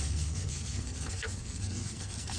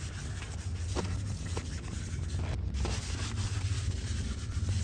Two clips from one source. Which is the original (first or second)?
second